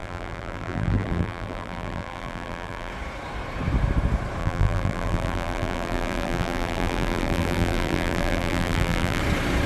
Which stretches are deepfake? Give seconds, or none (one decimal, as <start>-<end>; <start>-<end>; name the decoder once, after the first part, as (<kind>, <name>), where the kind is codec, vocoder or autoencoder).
0.0-2.9 (vocoder, BigVGAN v2); 4.4-9.2